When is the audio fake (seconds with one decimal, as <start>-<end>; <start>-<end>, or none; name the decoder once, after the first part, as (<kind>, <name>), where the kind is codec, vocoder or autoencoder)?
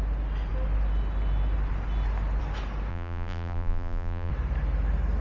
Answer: 2.9-4.3 (vocoder, BigVGAN v2)